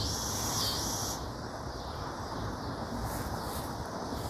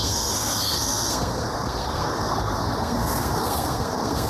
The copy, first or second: second